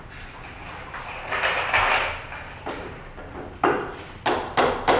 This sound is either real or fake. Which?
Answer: real